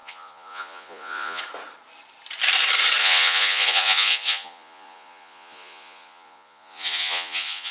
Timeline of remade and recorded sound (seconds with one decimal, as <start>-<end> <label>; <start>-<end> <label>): 0.0-1.4 remade; 1.4-3.0 recorded; 3.0-7.7 remade